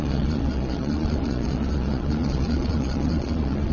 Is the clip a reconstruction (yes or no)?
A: yes